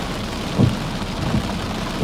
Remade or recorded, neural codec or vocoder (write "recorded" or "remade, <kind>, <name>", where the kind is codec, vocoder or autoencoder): recorded